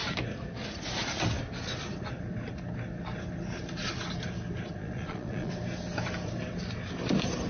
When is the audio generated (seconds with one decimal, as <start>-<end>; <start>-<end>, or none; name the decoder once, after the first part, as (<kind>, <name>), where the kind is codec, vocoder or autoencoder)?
4.8-5.5 (vocoder, Vocos)